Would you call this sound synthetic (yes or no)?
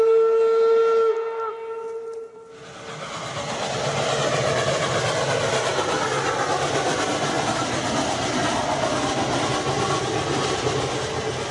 no